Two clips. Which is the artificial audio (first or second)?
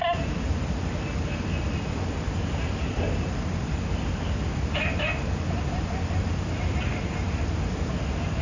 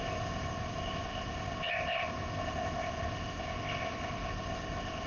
second